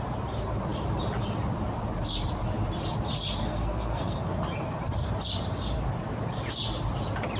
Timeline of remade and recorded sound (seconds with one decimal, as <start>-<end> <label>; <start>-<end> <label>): 0.0-3.4 recorded; 3.4-4.2 remade; 4.2-7.4 recorded